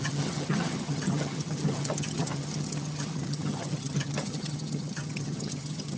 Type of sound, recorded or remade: remade